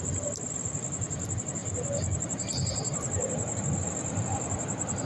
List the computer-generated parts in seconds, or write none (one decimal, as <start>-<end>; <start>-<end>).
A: none